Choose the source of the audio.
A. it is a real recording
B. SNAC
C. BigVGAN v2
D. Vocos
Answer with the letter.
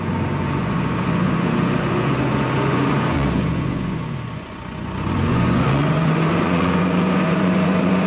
D